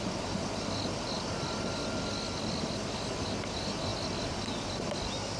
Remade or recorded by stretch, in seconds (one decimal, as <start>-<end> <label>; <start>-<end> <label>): 0.0-5.4 recorded